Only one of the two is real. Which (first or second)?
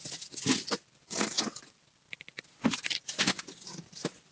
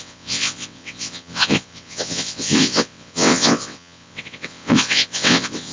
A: first